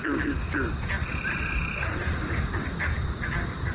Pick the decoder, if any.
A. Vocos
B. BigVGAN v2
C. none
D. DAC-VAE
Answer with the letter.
C